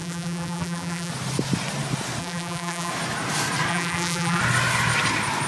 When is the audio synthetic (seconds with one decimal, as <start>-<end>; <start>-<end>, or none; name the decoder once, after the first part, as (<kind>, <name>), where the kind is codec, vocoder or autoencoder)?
0.0-1.1 (vocoder, BigVGAN v2); 2.2-2.9; 3.7-4.4